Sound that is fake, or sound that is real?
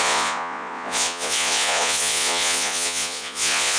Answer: fake